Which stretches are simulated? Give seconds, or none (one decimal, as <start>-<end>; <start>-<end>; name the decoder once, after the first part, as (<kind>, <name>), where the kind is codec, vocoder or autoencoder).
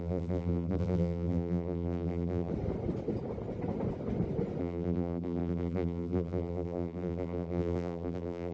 0.0-2.5 (vocoder, BigVGAN v2); 4.6-8.5